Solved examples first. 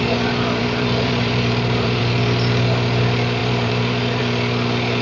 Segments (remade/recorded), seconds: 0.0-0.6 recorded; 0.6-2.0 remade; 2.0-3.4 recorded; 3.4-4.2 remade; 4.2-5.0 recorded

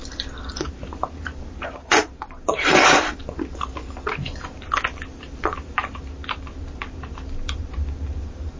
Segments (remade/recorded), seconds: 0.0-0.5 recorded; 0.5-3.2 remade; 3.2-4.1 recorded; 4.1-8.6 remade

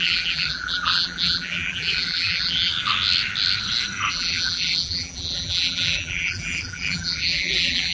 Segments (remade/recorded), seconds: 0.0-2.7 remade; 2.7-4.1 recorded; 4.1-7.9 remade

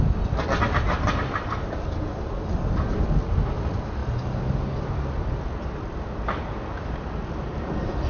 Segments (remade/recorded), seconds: 0.0-8.1 recorded

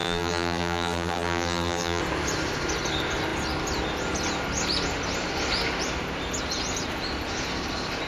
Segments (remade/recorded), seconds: 0.0-2.0 remade; 2.0-8.1 recorded